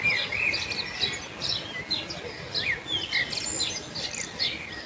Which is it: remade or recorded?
recorded